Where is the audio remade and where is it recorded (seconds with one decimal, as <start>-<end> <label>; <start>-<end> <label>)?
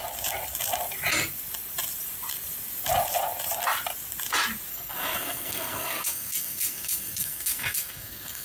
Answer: 0.0-4.7 recorded; 4.7-8.4 remade